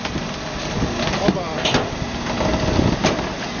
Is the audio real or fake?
real